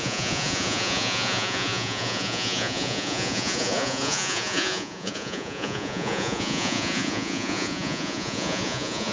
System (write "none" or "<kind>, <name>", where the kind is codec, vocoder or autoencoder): vocoder, Vocos